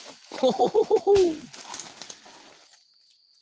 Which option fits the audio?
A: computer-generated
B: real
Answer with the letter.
B